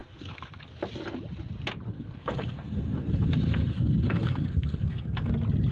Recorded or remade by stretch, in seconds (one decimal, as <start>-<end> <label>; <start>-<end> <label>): 0.0-0.6 remade; 0.6-1.9 recorded; 1.9-5.3 remade; 5.3-5.7 recorded